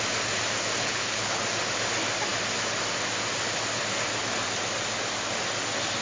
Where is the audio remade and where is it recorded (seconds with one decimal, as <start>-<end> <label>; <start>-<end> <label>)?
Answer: 0.0-0.8 recorded; 0.8-1.4 remade; 1.4-6.0 recorded